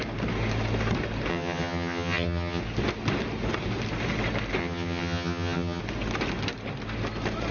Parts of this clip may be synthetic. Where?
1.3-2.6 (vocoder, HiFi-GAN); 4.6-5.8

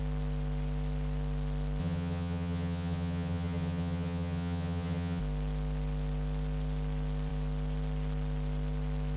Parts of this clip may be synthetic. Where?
1.8-5.2 (vocoder, HiFi-GAN)